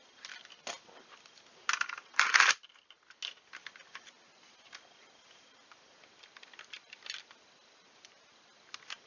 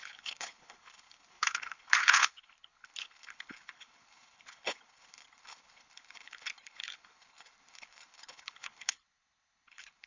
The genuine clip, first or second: first